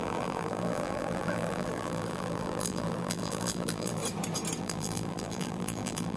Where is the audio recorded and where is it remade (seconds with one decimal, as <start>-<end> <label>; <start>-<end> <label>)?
0.0-4.0 remade; 4.0-4.6 recorded; 4.6-6.2 remade